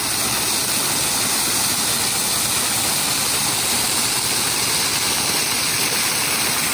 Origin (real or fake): real